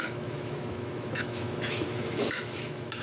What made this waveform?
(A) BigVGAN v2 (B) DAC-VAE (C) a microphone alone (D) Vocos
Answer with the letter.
B